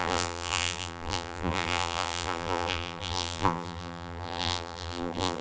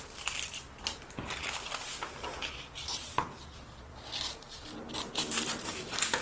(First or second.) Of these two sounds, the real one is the second